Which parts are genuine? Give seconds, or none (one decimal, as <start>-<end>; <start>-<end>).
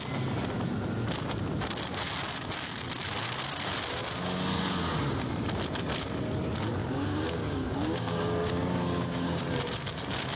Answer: 0.0-6.8; 9.4-10.4